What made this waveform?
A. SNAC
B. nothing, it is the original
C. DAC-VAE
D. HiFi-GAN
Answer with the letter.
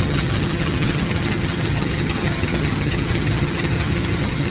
D